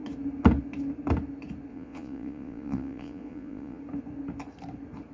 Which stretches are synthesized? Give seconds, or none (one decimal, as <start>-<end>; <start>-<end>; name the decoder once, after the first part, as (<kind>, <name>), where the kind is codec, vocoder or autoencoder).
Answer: 1.7-3.8 (vocoder, Vocos)